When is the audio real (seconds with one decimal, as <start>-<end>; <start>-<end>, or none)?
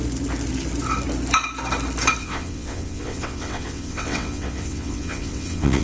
0.0-2.2